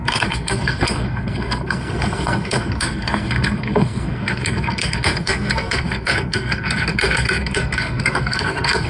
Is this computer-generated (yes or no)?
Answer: yes